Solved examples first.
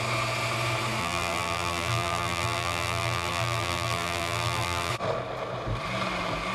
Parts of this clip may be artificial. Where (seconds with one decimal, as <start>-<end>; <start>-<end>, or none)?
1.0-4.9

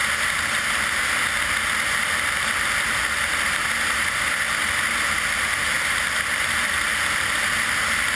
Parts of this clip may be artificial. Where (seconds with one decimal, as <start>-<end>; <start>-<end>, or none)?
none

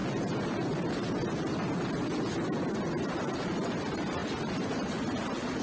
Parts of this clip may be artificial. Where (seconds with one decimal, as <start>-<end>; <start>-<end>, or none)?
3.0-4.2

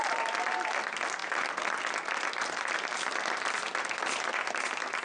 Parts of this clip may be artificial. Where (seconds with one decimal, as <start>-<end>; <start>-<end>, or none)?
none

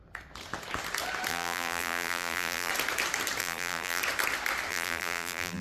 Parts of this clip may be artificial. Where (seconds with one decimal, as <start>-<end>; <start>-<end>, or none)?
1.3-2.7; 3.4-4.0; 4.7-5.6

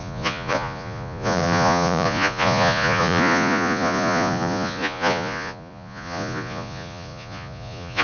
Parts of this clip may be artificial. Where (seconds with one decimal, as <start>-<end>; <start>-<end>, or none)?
0.0-8.0

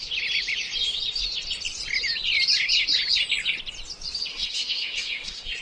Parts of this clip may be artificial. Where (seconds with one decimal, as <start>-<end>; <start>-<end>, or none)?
4.3-5.6

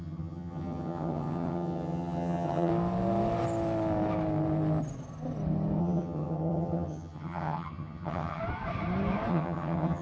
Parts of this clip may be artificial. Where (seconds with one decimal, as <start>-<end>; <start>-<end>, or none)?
0.0-2.7; 5.8-8.4; 9.3-10.0